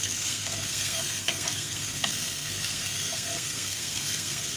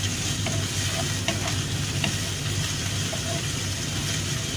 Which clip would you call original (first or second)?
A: second